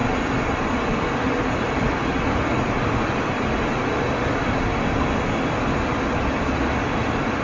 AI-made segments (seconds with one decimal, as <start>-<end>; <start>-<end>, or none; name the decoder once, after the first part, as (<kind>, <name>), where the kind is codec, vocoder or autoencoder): none